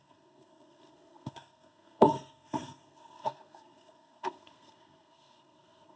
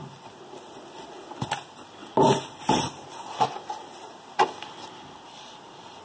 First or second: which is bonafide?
second